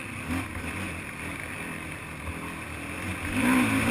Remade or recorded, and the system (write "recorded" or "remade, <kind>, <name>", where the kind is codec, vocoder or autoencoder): recorded